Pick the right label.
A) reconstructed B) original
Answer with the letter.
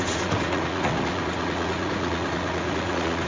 A